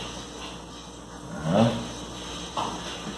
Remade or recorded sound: recorded